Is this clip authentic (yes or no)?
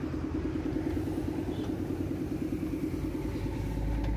yes